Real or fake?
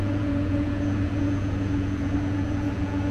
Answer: fake